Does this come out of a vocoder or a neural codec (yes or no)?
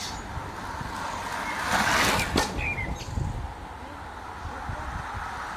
no